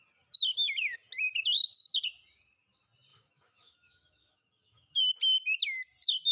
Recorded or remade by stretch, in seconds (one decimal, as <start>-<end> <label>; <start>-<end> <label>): 0.0-3.1 recorded; 3.1-5.0 remade; 5.0-6.3 recorded